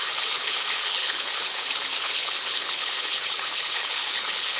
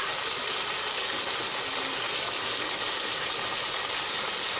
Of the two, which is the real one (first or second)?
second